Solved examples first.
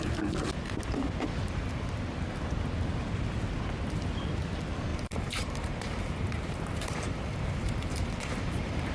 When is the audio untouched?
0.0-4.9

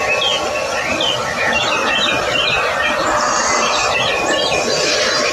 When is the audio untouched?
0.0-5.3

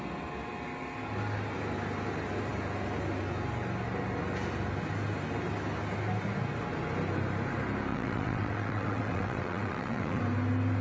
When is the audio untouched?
0.0-7.9; 10.2-10.8

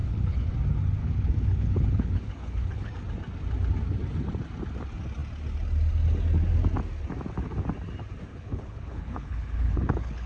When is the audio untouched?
0.5-1.0; 2.9-8.3

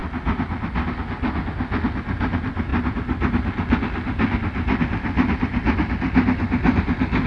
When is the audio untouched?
0.0-7.3

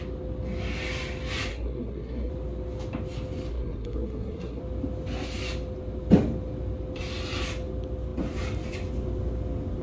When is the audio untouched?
0.0-1.5; 2.3-3.5; 4.6-9.8